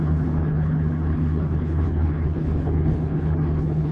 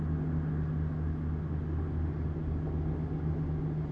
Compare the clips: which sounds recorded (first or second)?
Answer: second